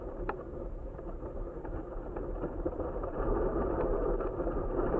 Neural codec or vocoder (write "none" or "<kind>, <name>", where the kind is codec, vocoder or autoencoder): vocoder, BigVGAN v2